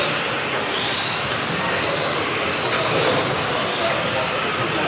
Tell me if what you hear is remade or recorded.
recorded